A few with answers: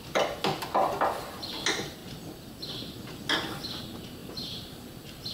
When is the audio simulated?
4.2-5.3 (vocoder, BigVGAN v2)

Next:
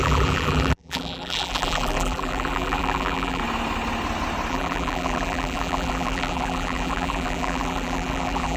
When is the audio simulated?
0.0-3.4 (vocoder, BigVGAN v2); 4.5-8.6